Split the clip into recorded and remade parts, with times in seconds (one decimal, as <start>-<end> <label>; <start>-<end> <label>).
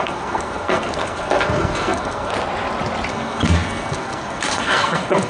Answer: 0.0-2.3 remade; 2.3-3.1 recorded; 3.1-5.3 remade